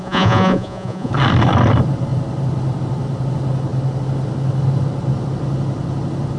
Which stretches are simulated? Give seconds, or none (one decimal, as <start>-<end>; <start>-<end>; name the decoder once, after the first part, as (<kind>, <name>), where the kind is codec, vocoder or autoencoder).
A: 0.0-1.1 (vocoder, Vocos)